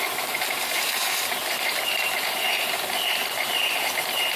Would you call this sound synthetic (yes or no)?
yes